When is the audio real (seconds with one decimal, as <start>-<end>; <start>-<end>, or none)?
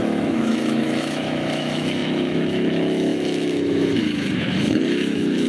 none